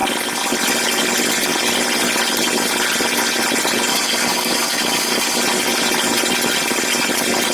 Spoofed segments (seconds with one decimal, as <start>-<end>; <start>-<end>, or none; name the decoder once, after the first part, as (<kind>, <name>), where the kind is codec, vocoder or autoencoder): 3.9-5.4 (codec, DAC)